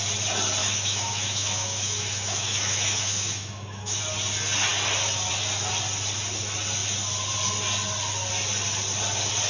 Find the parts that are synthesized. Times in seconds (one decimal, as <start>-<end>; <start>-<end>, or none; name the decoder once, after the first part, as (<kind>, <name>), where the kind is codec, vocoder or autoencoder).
0.6-4.0 (autoencoder, DAC-VAE)